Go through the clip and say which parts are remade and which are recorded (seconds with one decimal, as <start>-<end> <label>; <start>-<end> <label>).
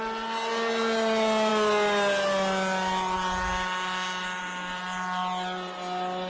0.0-6.3 recorded